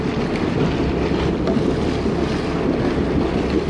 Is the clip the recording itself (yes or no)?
yes